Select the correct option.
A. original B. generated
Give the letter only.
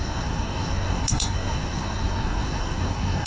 B